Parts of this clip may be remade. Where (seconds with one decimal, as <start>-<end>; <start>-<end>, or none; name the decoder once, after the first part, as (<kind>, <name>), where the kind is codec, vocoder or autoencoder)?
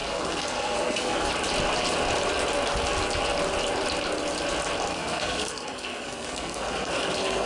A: 0.0-1.3 (codec, SNAC); 4.9-7.5